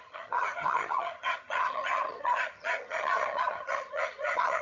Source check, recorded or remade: remade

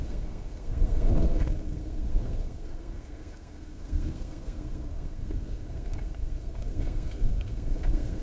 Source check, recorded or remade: remade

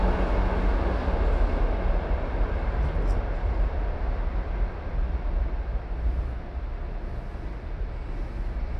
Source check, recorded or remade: recorded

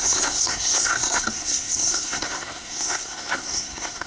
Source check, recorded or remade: remade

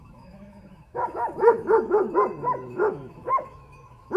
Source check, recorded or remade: remade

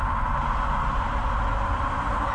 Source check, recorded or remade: recorded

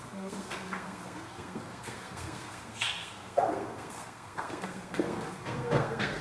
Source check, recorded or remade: remade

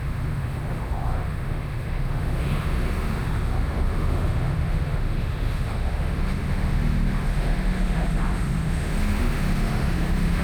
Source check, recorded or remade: remade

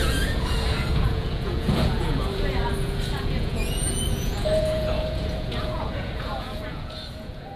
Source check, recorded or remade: remade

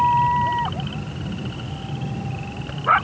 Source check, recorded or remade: recorded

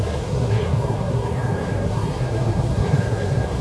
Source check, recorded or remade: remade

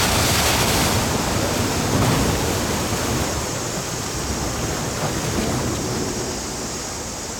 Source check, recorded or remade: recorded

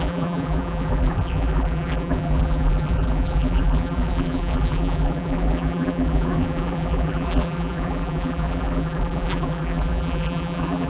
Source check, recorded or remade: remade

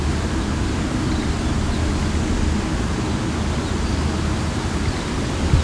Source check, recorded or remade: recorded